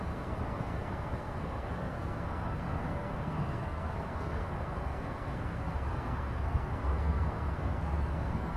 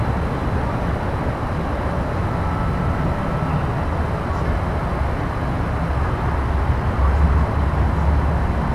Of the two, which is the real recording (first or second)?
second